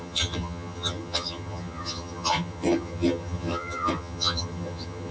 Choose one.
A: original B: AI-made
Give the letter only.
B